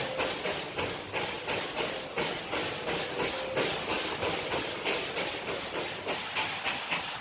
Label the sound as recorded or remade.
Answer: recorded